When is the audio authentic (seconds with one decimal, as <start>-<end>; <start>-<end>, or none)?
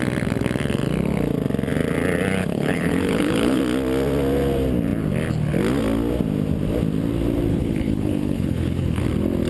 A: 0.0-2.4; 3.6-7.5; 9.0-9.5